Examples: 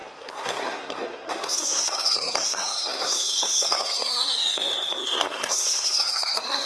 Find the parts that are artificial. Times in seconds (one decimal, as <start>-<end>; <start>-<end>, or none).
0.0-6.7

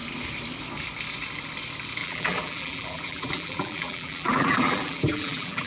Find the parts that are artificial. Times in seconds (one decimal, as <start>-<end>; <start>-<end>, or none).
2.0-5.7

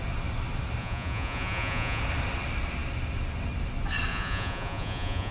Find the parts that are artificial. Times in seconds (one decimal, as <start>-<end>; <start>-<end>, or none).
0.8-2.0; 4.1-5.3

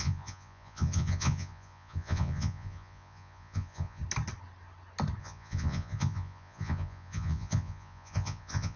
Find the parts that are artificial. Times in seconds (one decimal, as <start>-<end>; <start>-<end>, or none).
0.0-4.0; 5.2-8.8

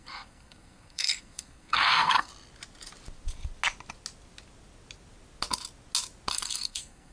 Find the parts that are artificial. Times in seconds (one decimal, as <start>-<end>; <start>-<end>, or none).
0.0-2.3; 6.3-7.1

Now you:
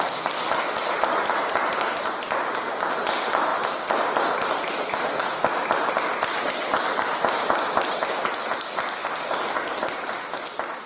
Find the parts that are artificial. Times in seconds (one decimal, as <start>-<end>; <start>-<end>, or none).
none